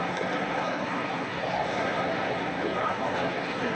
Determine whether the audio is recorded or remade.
remade